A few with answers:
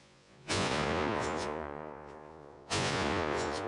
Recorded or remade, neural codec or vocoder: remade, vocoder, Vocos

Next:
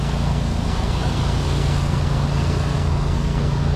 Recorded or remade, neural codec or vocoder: remade, codec, SNAC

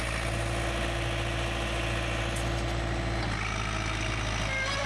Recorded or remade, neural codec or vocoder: recorded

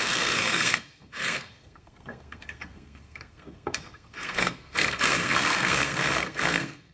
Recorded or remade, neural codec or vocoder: remade, codec, SNAC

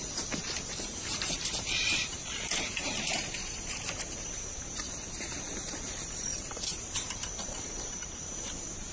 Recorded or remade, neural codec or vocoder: remade, vocoder, BigVGAN v2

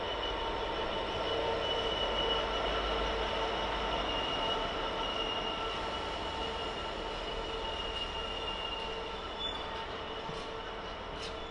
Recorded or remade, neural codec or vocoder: recorded